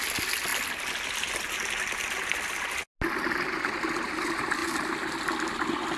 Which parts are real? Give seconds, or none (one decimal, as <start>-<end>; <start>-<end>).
0.0-0.5; 1.3-4.6

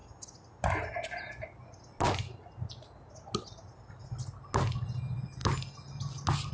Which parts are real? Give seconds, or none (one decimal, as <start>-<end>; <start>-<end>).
0.0-6.5

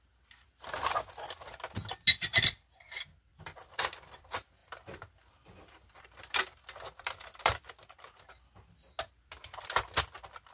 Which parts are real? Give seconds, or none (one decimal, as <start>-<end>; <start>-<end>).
0.0-3.3; 4.0-4.6; 8.3-10.5

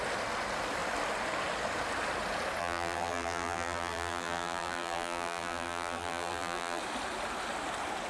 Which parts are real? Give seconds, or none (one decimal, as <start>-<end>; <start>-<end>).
0.0-2.6; 6.8-8.1

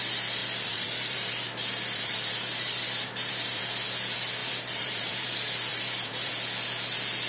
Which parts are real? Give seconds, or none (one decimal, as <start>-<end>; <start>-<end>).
0.0-0.4; 3.7-4.4; 5.3-5.7; 6.3-7.3